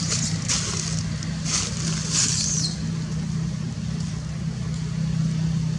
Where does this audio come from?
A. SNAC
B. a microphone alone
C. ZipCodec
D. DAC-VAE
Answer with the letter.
B